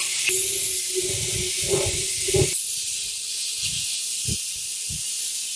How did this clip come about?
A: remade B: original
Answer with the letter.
B